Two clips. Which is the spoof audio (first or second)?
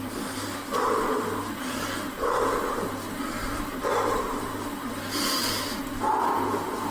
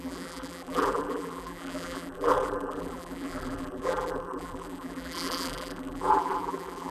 second